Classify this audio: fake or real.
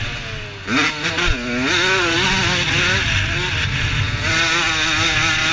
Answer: real